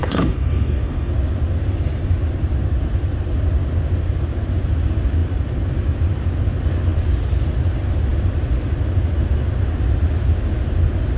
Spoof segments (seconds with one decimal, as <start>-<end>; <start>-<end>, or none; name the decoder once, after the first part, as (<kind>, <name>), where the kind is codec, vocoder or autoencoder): 0.0-1.1 (codec, DAC)